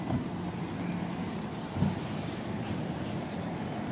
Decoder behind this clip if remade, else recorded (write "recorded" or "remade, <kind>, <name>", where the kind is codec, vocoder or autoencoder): recorded